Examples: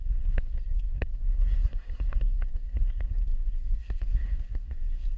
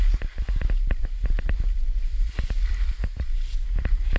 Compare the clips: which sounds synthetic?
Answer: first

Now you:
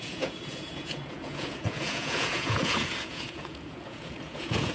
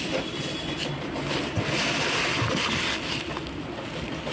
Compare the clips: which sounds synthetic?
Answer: first